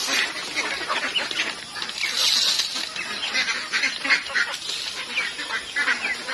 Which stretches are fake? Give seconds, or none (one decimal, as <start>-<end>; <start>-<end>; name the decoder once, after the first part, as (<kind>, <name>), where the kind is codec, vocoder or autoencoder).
none